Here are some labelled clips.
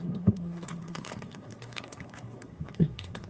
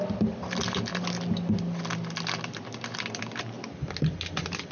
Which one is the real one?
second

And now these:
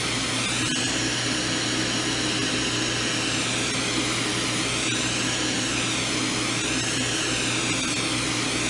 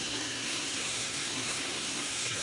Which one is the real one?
first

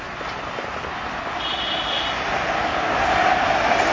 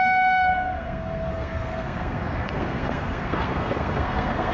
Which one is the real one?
first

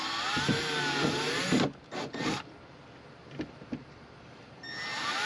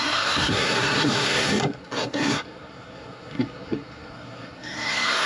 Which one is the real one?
first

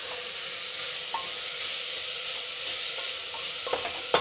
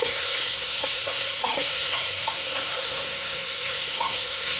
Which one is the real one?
first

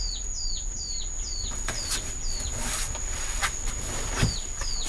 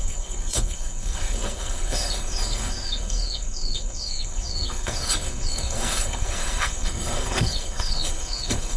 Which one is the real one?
first